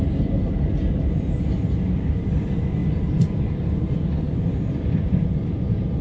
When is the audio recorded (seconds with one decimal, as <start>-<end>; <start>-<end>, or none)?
0.0-6.0